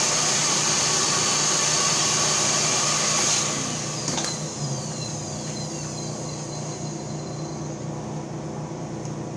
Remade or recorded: recorded